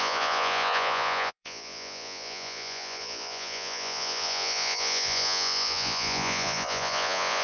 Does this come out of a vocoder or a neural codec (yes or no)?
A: yes